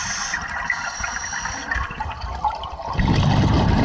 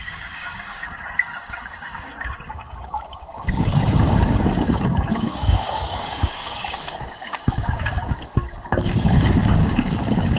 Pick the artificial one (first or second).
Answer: second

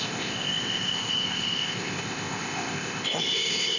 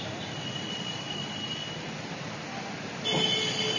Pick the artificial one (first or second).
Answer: first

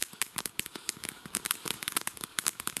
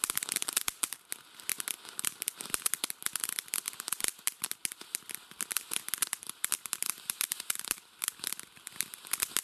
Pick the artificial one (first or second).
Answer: first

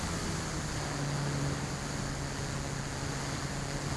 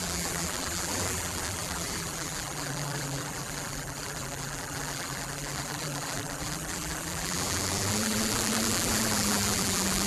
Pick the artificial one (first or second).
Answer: second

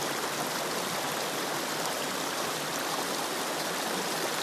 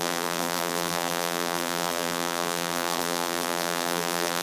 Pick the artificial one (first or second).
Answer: second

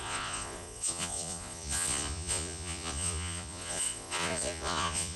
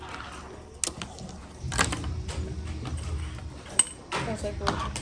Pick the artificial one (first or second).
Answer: first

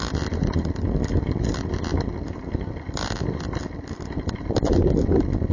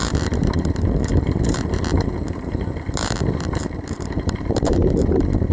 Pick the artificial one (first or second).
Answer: second